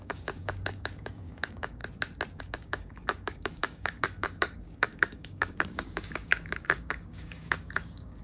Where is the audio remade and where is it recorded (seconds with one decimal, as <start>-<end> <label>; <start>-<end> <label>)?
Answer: 0.0-1.8 remade; 1.8-2.4 recorded; 2.4-8.2 remade